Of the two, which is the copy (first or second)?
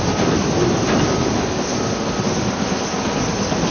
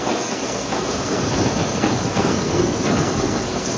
second